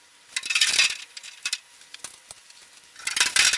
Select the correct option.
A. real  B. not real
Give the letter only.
A